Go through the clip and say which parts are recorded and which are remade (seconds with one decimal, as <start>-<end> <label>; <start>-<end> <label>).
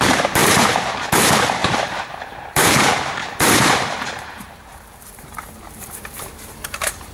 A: 0.0-7.1 remade